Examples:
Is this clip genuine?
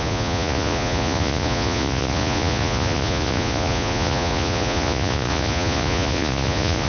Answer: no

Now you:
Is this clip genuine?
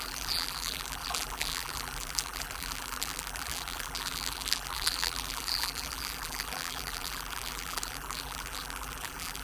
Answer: no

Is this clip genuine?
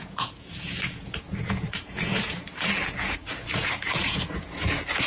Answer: no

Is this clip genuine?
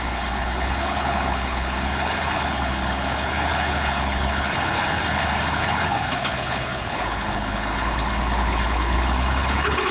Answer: no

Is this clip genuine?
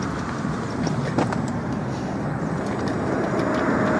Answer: yes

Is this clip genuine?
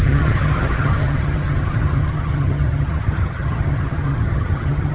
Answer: no